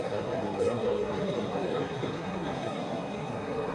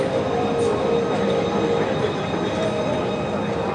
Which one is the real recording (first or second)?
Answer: second